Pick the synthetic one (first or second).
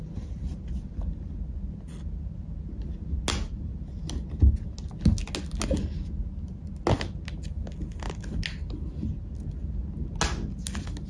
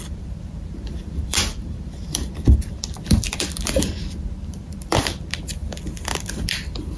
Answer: second